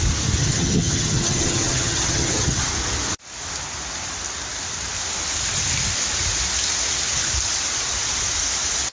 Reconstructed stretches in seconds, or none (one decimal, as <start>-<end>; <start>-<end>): 0.4-2.7